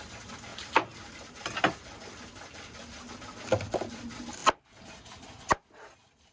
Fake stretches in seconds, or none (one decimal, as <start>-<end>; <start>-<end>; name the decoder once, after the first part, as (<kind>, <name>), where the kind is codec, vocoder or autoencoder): none